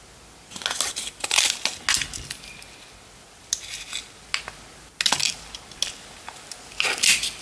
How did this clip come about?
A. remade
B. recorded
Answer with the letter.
B